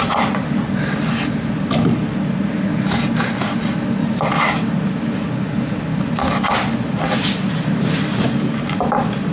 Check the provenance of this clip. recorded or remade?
recorded